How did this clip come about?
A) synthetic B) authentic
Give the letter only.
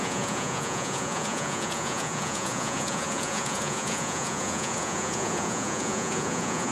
A